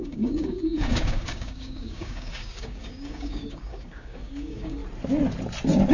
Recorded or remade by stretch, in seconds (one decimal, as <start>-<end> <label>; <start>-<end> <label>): 0.0-4.8 remade; 4.8-5.9 recorded